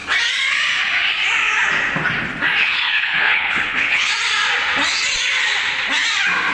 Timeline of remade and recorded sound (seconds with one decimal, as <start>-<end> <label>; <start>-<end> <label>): 0.0-2.6 recorded; 2.6-4.1 remade; 4.1-6.5 recorded